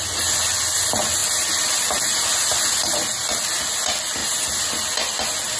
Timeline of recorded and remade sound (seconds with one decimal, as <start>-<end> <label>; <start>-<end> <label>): 0.0-5.6 recorded